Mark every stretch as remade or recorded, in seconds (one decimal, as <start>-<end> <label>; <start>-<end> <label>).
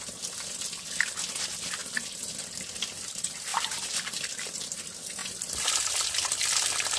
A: 0.0-3.5 recorded; 3.5-4.6 remade; 4.6-5.2 recorded; 5.2-5.7 remade; 5.7-7.0 recorded